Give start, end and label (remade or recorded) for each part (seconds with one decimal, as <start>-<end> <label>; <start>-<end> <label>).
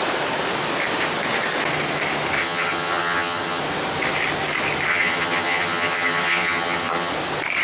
0.0-2.4 recorded; 2.4-3.6 remade; 3.6-4.9 recorded; 4.9-7.1 remade; 7.1-7.6 recorded